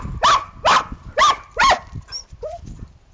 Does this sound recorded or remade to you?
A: remade